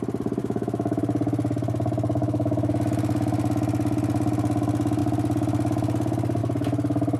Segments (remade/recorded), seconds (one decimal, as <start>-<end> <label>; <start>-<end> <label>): 0.0-0.4 recorded; 0.4-1.0 remade; 1.0-2.2 recorded; 2.2-2.7 remade; 2.7-7.2 recorded